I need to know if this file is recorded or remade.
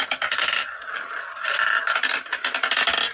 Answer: remade